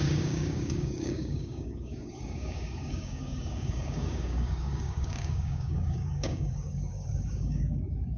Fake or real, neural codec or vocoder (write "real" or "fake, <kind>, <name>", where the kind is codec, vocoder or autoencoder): fake, codec, DAC